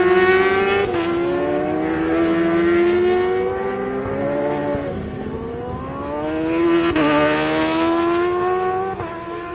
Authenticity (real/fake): real